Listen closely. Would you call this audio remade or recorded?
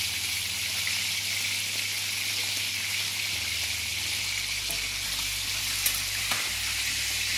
recorded